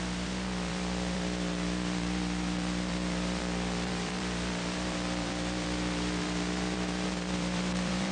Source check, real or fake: fake